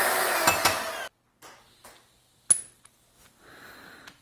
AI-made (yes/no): no